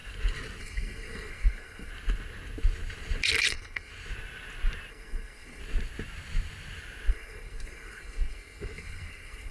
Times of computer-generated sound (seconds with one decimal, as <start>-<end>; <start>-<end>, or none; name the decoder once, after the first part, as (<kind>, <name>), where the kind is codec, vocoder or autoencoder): 0.6-1.9 (codec, SNAC); 3.5-3.9; 4.9-5.6; 7.1-9.5